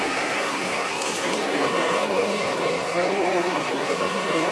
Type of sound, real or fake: fake